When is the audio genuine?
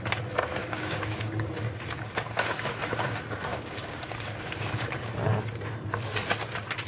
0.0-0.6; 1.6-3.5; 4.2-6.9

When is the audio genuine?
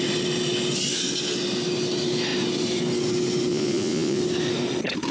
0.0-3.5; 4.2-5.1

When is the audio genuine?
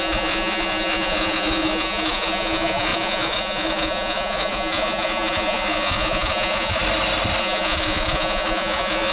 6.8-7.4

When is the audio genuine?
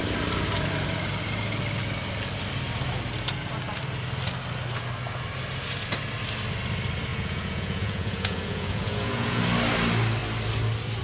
0.0-7.1; 9.4-11.0